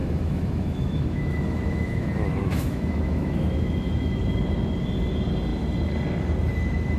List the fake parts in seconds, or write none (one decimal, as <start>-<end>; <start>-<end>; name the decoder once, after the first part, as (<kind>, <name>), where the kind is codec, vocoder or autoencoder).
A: 0.0-4.2 (autoencoder, DAC-VAE)